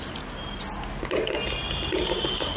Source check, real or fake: real